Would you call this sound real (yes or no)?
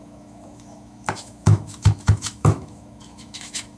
no